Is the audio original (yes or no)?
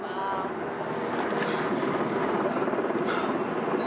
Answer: yes